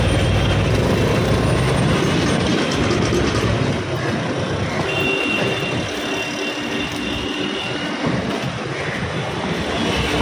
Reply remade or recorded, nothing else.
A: recorded